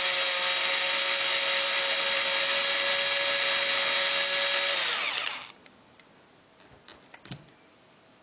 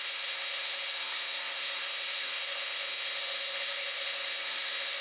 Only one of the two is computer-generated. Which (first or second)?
second